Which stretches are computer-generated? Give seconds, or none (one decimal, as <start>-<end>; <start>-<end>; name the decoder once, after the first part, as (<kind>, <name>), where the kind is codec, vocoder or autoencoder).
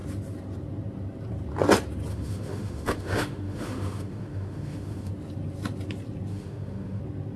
2.1-5.1 (autoencoder, DAC-VAE); 6.3-7.0